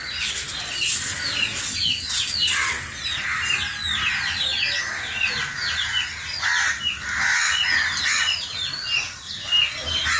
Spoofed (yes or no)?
no